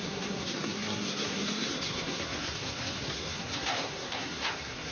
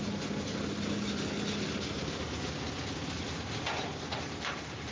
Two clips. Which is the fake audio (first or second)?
first